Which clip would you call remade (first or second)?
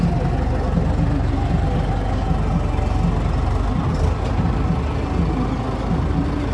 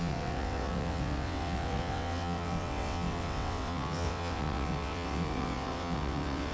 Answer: second